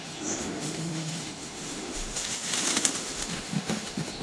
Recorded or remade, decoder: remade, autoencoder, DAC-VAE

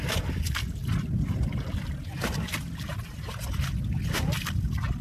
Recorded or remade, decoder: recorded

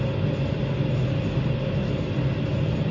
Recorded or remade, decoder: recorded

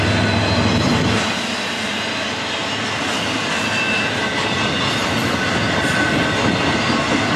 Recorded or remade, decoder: recorded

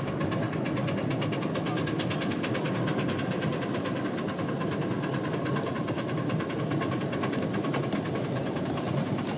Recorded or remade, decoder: recorded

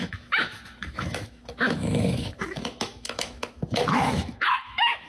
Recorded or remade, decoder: remade, autoencoder, DAC-VAE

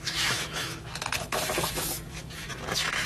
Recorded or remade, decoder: remade, autoencoder, DAC-VAE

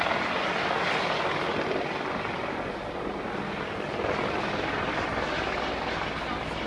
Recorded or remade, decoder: recorded